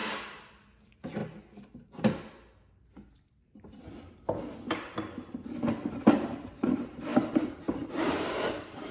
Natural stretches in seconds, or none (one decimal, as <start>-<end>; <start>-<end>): 0.0-0.5; 1.2-5.9; 7.1-7.6